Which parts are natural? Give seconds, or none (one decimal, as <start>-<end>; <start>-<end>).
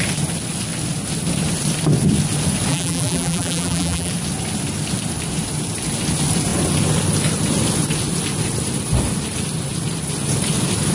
0.0-2.7; 4.1-10.9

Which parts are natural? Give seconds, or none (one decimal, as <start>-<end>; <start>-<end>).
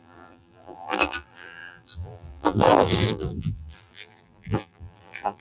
none